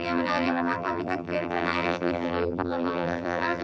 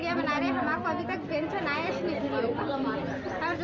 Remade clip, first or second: first